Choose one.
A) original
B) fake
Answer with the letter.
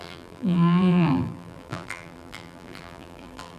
B